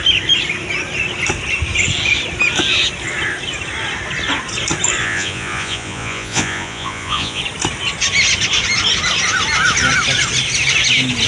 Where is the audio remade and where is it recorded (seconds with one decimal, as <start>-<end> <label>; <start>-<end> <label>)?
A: 0.0-5.0 recorded; 5.0-7.4 remade; 7.4-11.3 recorded